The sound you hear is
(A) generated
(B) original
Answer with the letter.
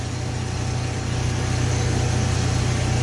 B